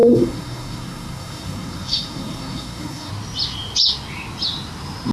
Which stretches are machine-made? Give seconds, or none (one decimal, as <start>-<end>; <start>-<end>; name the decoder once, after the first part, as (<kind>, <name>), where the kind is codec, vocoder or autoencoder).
0.0-3.1 (codec, SNAC)

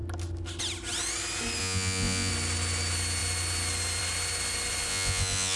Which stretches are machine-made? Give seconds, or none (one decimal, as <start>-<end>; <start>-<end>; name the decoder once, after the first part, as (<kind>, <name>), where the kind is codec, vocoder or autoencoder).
1.6-2.3 (vocoder, Vocos); 4.9-5.6

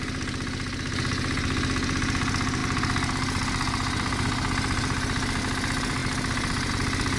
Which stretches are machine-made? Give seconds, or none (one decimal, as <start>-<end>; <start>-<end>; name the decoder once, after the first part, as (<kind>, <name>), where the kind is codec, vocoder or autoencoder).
none

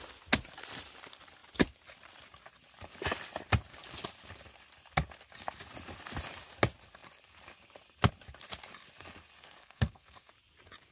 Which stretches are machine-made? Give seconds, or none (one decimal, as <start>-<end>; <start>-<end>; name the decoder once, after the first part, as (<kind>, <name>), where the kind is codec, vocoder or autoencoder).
9.6-10.3 (codec, SNAC)

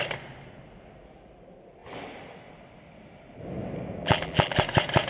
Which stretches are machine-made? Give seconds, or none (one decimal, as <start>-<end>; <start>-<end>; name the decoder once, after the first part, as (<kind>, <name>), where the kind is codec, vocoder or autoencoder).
4.0-4.6 (vocoder, BigVGAN v2)